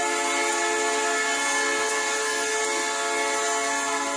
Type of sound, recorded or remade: recorded